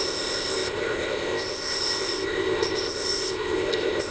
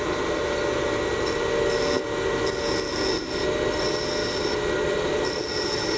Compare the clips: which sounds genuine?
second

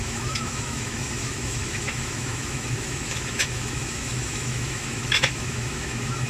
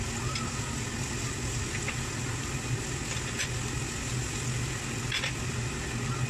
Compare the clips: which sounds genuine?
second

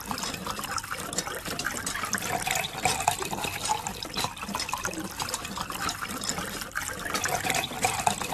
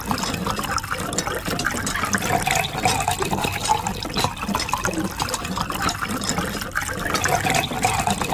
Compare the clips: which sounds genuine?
second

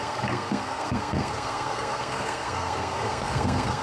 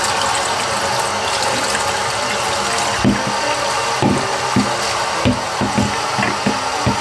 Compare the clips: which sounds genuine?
second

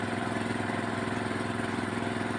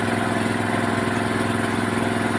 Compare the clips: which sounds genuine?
second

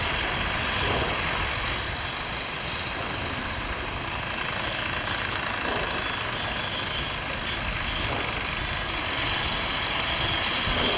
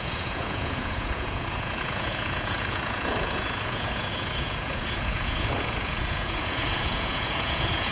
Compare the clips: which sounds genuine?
first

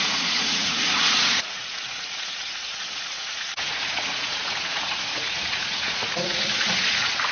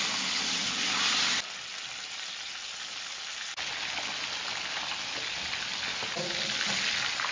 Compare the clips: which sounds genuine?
second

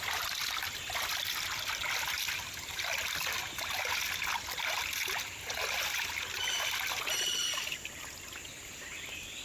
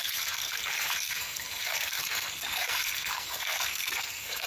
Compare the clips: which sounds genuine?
first